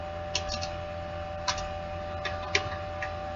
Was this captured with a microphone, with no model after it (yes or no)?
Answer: yes